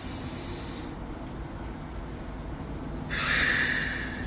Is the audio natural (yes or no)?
yes